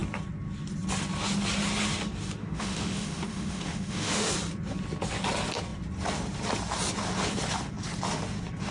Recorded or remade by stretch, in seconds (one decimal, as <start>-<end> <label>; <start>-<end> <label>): 0.0-2.4 recorded; 2.4-4.3 remade; 4.3-8.7 recorded